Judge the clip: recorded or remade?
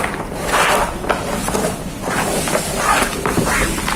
recorded